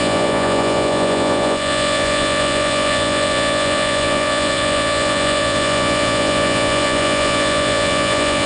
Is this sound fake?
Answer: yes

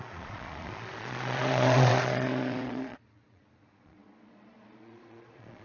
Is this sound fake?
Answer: yes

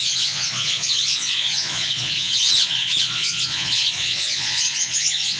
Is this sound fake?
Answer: yes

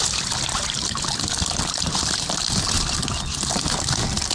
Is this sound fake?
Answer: no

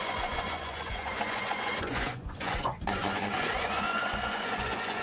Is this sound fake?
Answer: yes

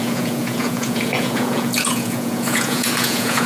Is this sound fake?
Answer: yes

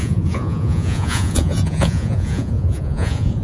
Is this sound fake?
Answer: yes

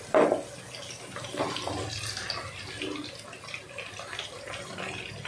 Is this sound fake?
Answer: no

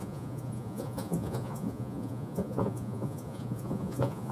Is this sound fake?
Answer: yes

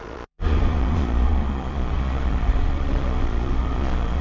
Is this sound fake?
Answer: yes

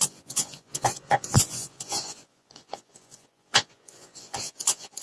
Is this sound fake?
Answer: yes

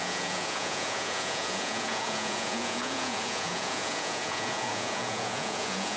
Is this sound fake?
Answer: yes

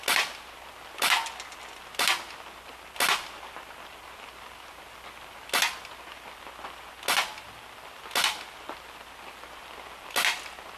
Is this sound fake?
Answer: no